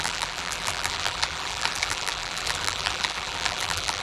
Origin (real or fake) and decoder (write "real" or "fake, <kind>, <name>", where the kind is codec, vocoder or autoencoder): fake, vocoder, BigVGAN v2